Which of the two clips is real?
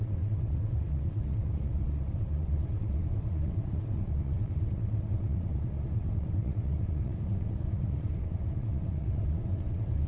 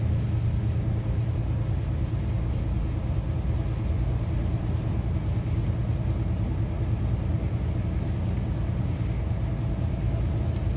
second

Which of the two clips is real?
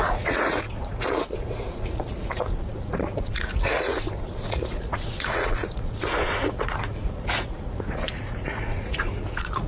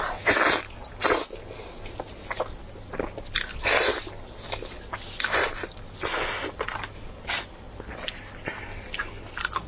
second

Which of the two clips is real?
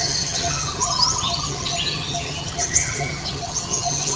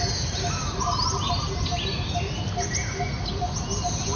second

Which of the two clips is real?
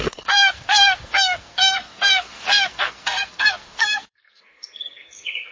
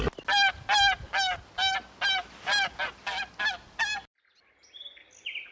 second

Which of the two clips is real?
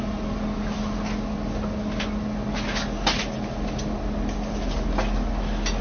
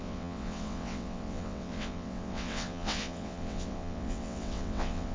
first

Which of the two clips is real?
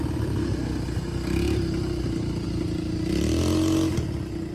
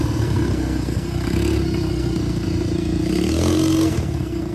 first